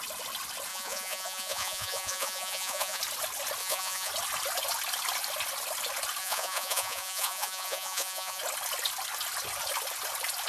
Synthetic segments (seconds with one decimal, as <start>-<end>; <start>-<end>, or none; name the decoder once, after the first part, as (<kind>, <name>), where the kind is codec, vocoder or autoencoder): 0.7-3.0 (vocoder, Vocos); 3.6-4.1; 6.2-8.4